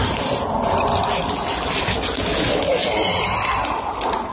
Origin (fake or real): real